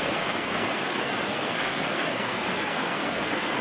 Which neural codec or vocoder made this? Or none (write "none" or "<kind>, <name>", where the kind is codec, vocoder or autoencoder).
codec, SNAC